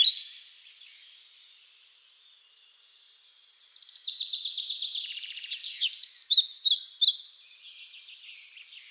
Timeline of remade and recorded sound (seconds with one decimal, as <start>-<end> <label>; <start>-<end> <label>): 0.0-8.9 recorded